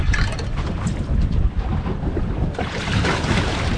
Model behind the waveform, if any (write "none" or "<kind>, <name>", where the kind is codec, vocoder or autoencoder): none